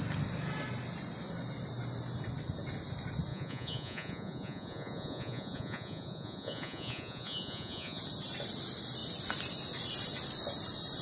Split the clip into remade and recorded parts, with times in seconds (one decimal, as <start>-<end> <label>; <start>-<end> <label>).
0.0-3.3 recorded; 3.3-8.0 remade; 8.0-11.0 recorded